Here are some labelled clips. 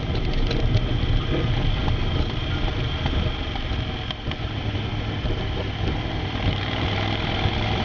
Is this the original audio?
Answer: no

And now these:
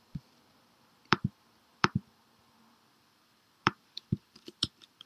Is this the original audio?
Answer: no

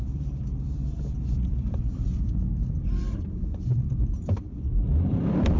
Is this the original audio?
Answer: no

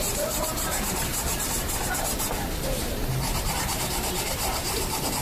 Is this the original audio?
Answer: no